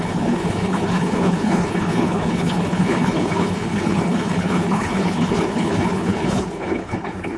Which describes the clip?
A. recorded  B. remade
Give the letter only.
B